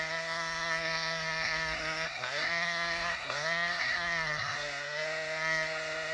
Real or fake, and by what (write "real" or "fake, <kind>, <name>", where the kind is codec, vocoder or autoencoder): fake, codec, SNAC